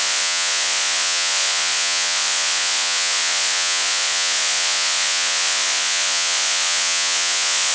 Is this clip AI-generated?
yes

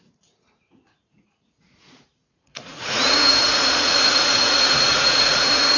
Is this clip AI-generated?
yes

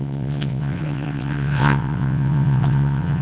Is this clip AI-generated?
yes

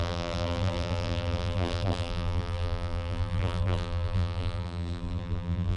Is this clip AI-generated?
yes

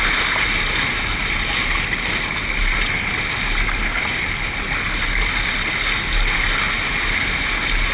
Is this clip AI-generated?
no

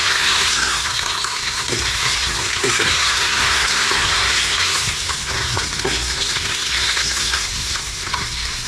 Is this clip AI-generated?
yes